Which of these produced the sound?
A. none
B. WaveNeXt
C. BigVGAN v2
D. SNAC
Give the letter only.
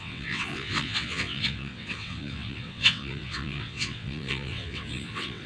B